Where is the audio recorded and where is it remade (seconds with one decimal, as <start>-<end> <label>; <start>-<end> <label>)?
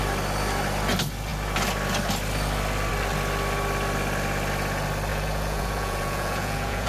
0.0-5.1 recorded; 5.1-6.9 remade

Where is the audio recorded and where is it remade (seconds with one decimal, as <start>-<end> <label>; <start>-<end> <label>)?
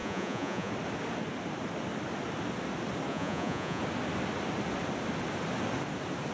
0.0-0.7 remade; 0.7-3.1 recorded; 3.1-3.8 remade; 3.8-6.3 recorded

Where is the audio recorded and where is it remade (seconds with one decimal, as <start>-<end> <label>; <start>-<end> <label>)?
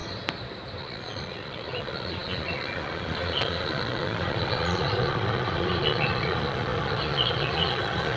0.0-0.8 recorded; 0.8-8.2 remade